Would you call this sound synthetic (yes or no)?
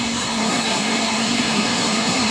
yes